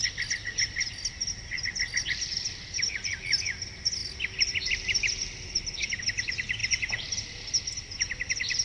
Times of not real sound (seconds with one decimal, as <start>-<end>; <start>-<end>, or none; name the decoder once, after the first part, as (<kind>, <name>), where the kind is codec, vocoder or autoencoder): none